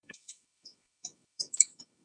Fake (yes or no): yes